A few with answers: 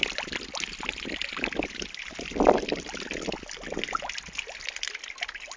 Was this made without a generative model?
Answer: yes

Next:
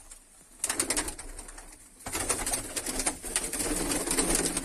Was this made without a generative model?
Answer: yes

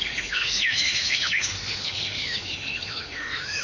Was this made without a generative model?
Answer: no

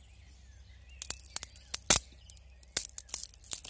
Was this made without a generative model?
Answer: yes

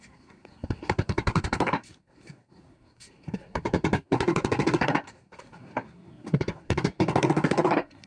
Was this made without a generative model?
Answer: no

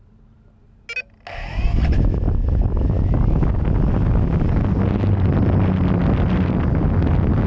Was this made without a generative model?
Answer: yes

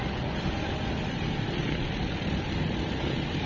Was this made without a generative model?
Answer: yes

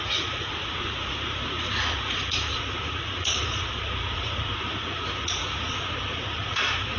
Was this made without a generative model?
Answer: no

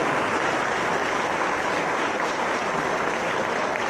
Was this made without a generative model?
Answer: yes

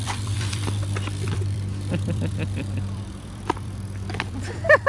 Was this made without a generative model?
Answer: no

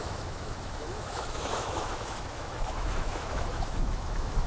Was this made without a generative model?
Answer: no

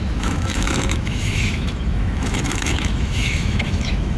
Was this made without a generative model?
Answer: no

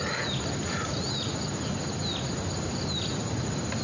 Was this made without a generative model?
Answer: yes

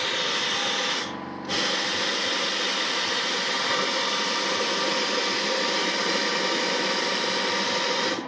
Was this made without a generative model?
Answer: yes